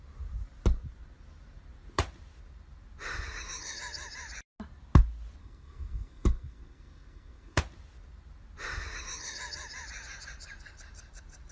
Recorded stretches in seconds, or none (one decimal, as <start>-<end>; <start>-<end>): 0.0-5.4; 7.6-11.5